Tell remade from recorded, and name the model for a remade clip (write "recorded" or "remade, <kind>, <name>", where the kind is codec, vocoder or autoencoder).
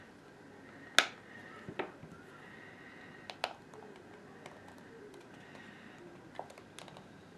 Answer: recorded